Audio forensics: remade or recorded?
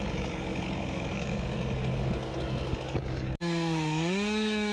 remade